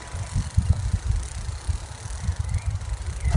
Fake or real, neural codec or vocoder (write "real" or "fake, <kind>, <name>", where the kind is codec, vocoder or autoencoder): real